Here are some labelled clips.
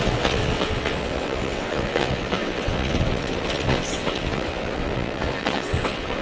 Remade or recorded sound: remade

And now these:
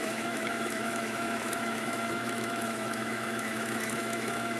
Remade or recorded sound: remade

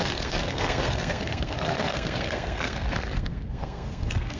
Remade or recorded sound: remade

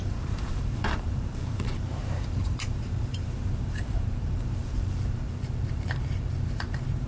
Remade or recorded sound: remade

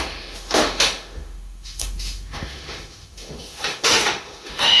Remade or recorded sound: remade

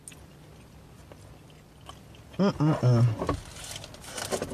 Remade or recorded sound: recorded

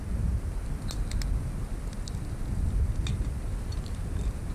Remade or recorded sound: recorded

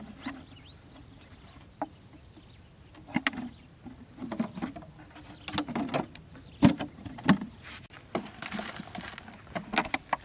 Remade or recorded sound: recorded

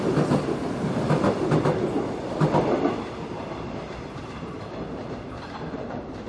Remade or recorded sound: recorded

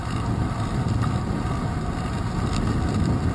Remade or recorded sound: recorded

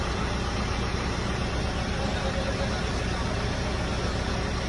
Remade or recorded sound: recorded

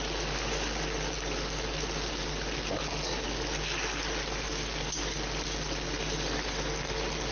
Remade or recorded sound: recorded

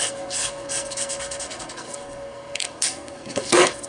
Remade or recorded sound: remade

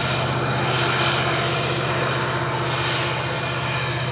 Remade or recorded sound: recorded